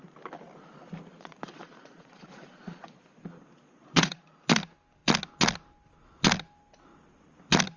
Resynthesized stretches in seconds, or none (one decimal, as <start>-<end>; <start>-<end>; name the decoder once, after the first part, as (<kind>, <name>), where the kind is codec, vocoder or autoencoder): 1.1-4.2 (vocoder, Vocos)